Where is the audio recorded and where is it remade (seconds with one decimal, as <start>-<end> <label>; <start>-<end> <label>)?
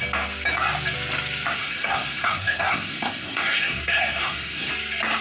0.0-1.6 recorded; 1.6-4.7 remade; 4.7-5.2 recorded